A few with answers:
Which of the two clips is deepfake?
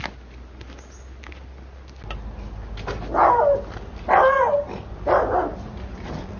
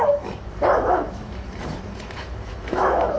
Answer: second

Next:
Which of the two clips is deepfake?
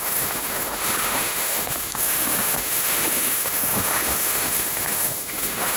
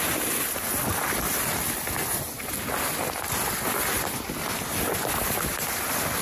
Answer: first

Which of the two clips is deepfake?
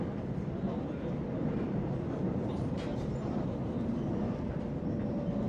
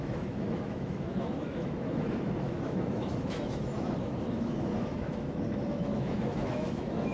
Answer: second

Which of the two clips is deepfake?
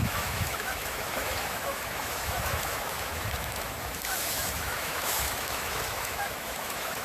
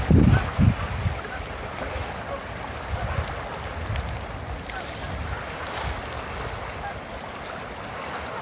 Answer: first